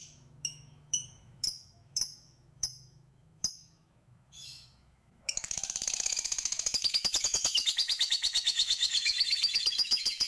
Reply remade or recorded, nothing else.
remade